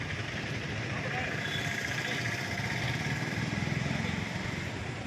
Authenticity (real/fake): fake